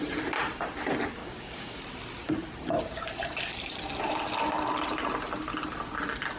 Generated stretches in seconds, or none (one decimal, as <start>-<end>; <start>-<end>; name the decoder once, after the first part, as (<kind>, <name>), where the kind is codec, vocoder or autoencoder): 1.2-1.8 (codec, DAC)

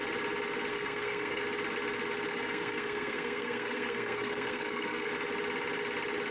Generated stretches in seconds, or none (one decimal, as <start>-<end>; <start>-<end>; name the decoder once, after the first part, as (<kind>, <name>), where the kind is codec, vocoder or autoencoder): 0.7-1.4 (codec, SNAC); 2.3-5.1

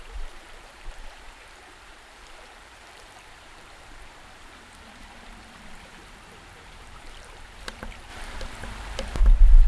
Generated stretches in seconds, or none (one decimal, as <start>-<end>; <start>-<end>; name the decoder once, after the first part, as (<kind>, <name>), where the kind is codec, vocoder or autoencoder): 0.0-9.7 (vocoder, BigVGAN v2)

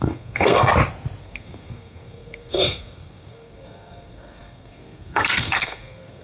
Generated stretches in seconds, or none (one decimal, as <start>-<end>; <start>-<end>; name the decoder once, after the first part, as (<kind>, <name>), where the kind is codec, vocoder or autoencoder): 0.0-0.7 (codec, SNAC); 1.2-6.2

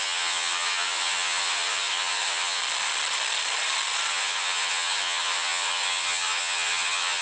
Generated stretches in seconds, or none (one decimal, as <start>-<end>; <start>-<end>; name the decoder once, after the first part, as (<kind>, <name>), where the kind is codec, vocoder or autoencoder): 0.0-2.6 (vocoder, HiFi-GAN); 4.1-7.2

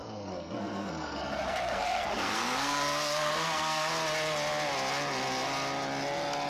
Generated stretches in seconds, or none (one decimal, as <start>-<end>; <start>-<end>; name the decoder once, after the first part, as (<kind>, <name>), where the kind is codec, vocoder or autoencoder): 0.0-3.9 (codec, SNAC)

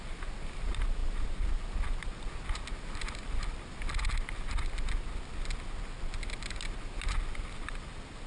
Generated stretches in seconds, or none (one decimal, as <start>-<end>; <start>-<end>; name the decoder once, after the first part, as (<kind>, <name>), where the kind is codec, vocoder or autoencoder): none